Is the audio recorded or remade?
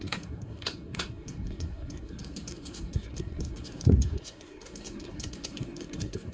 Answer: remade